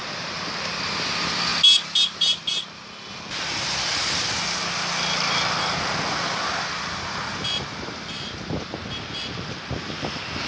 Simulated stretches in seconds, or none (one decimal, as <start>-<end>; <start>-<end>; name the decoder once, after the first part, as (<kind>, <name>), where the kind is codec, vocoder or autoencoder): none